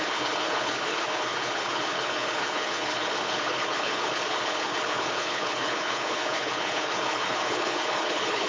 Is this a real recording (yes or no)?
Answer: no